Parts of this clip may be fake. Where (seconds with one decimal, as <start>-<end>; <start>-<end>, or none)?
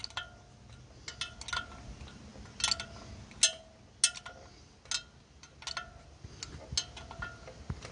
none